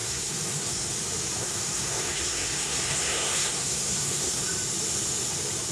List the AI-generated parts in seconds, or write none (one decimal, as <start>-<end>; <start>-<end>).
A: 0.0-0.9; 1.4-4.4